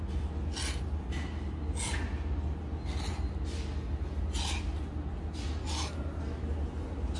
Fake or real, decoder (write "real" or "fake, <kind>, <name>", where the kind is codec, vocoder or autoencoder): real